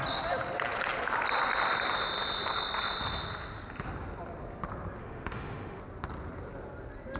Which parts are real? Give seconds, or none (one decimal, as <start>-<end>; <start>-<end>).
0.0-5.0; 5.8-7.2